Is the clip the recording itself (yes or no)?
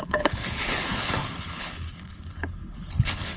no